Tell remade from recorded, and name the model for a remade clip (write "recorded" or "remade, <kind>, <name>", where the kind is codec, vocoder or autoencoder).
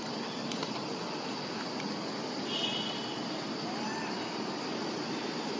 recorded